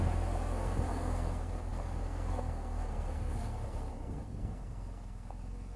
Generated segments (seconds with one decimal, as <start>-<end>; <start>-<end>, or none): 0.0-5.8